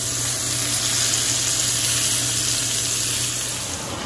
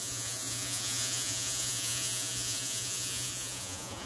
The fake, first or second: second